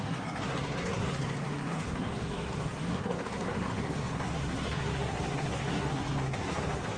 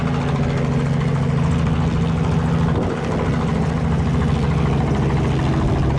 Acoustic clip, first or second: second